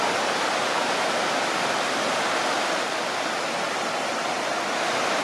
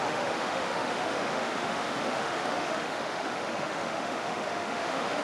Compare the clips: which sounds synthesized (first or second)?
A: second